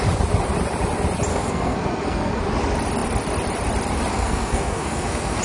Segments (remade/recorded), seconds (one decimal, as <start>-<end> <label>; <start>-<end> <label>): 0.0-1.3 recorded; 1.3-2.4 remade; 2.4-4.1 recorded; 4.1-5.4 remade